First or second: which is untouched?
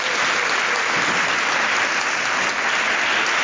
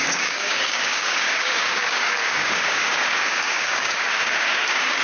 first